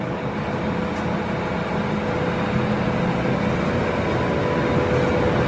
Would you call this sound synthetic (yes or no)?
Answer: no